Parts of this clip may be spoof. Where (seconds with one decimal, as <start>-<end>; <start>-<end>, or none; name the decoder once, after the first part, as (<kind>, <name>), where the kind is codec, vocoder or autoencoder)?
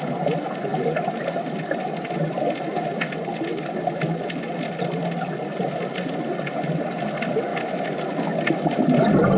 none